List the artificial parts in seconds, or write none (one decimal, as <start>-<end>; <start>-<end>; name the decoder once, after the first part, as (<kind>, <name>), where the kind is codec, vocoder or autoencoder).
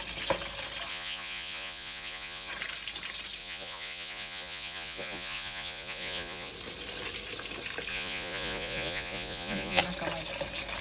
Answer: 0.9-2.5 (vocoder, Vocos); 3.4-6.5; 7.9-9.8